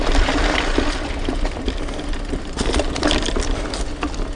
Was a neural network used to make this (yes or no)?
no